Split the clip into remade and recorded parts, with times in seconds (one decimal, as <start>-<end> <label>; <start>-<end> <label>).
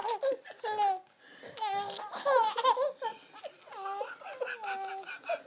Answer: 0.0-5.5 recorded